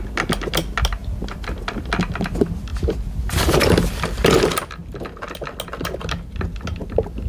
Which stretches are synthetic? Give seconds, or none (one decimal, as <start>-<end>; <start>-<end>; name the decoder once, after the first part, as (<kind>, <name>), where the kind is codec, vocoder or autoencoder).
none